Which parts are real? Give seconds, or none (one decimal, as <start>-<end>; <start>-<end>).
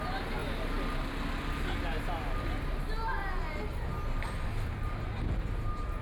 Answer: 0.0-6.0